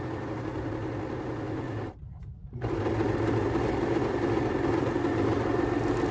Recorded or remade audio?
recorded